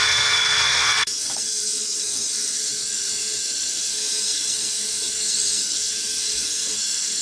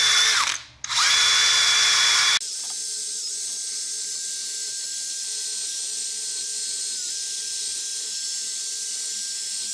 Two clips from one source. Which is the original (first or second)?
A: second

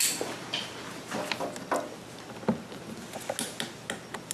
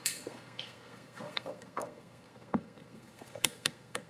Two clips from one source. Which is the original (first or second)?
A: first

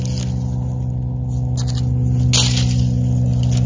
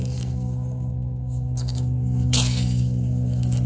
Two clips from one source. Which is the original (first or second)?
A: first